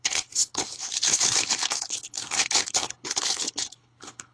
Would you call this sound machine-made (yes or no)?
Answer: yes